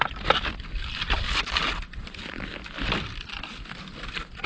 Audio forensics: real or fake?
fake